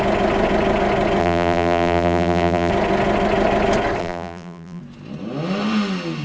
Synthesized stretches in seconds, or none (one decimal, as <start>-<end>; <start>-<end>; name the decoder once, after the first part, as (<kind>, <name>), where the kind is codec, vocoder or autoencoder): 1.2-2.7 (vocoder, BigVGAN v2); 4.0-4.8